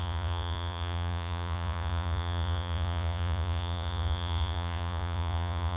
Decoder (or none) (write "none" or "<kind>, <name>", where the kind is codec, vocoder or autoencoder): vocoder, Vocos